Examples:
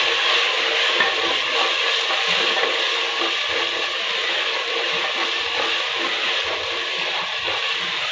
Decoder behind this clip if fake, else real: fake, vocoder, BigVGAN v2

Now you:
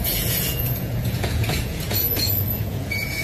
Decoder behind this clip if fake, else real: fake, vocoder, Vocos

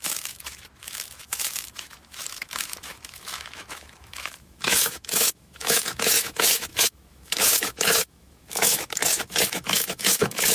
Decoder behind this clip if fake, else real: fake, autoencoder, DAC-VAE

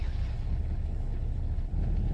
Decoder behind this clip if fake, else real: fake, codec, HILCodec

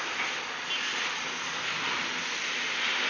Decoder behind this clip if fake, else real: real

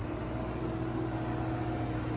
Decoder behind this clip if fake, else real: real